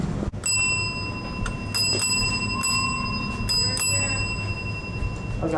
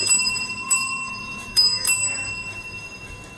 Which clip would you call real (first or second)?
first